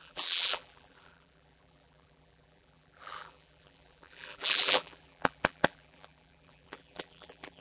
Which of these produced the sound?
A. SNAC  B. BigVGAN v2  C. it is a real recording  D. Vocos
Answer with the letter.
B